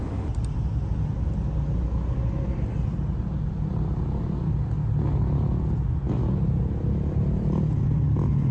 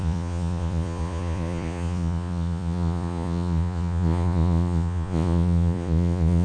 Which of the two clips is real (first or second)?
first